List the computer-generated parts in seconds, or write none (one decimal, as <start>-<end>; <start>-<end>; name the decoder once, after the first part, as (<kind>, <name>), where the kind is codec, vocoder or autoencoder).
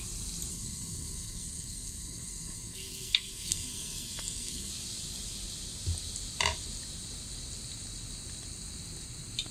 0.5-4.7 (codec, SNAC)